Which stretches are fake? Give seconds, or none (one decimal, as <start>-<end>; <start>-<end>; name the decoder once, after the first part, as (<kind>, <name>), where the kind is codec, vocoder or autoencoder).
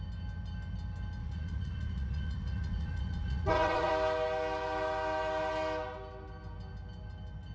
1.2-3.9 (vocoder, Vocos)